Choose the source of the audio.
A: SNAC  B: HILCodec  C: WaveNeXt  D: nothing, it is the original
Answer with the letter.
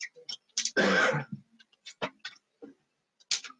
D